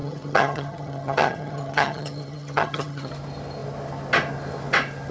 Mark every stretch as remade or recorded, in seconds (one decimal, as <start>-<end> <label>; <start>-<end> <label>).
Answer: 0.0-3.1 remade; 3.1-5.1 recorded